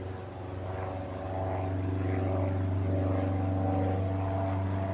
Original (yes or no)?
yes